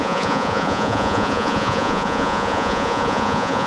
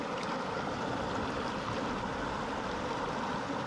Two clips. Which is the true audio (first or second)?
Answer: second